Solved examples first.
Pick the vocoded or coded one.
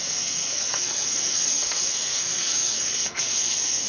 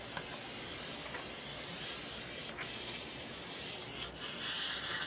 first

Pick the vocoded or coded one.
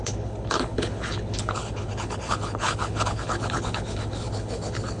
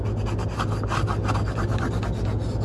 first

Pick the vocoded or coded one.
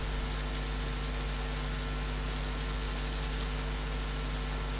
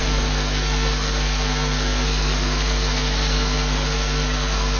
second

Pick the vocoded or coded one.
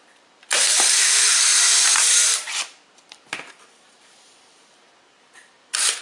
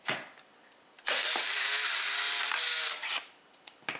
first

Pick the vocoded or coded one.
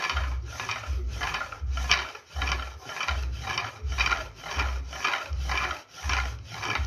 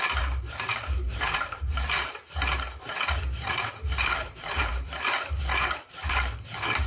second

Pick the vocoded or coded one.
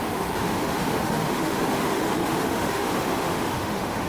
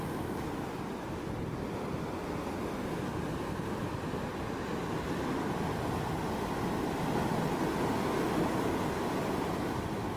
first